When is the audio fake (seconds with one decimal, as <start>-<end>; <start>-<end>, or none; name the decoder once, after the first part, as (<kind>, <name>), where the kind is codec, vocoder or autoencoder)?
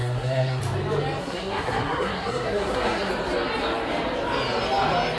0.0-0.6 (codec, SNAC); 1.2-3.1